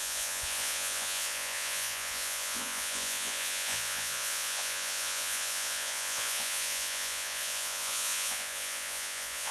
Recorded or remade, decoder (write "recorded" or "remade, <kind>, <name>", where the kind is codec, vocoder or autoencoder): remade, vocoder, Vocos